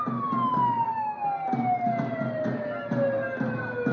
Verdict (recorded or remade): recorded